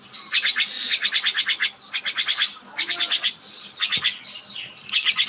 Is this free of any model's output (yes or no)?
yes